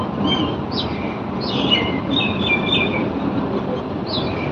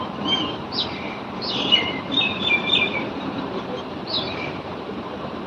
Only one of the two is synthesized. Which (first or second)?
second